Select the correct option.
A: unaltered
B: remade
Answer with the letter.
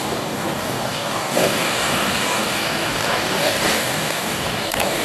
B